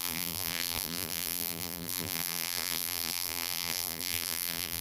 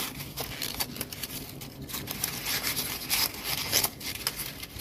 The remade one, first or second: first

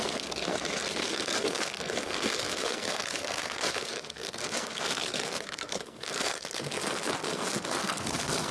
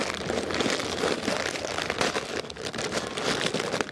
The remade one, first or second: first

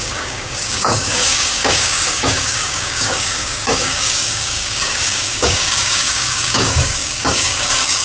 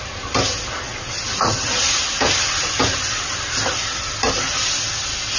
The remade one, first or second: first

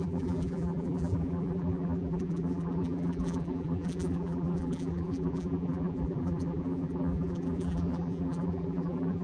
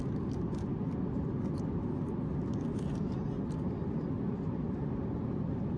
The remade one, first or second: first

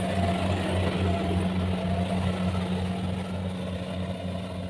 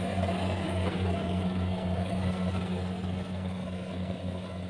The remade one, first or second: second